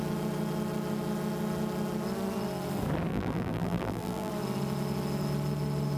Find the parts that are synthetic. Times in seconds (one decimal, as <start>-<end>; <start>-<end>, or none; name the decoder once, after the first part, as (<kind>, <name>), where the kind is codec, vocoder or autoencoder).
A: 3.1-4.3 (vocoder, BigVGAN v2)